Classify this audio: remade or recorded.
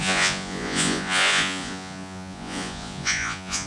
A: remade